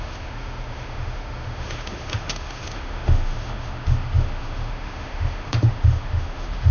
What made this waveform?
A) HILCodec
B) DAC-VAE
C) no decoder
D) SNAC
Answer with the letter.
B